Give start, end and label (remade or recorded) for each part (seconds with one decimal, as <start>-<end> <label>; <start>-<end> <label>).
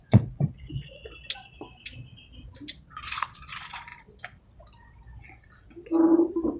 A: 0.0-1.0 remade; 1.0-2.7 recorded; 2.7-3.9 remade; 3.9-6.6 recorded